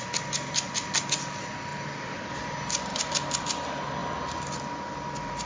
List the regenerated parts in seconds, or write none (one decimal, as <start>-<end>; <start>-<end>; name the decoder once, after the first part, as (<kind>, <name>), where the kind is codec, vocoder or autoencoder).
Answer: 1.7-3.1 (vocoder, BigVGAN v2)

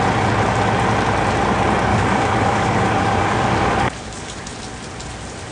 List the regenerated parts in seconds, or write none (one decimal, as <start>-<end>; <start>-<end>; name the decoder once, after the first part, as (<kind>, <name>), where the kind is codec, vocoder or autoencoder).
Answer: 1.9-4.4 (codec, DAC)